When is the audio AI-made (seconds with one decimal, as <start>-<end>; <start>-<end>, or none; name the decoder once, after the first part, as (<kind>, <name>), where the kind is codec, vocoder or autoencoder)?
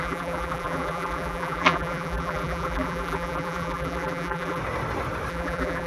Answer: 0.0-4.6 (vocoder, BigVGAN v2); 5.3-5.9